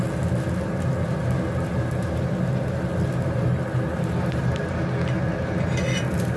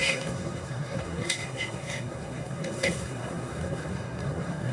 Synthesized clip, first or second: second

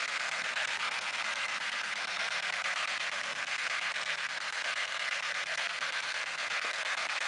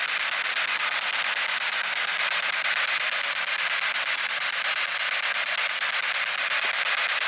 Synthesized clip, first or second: first